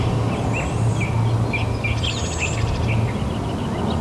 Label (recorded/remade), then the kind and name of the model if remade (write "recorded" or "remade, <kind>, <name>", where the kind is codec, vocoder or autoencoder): recorded